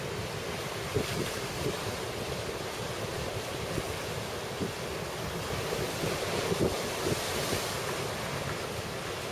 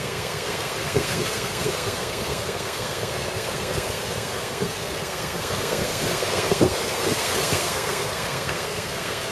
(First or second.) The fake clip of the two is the second